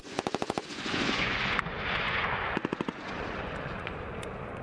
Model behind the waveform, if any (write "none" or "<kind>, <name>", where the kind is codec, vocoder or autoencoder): vocoder, Vocos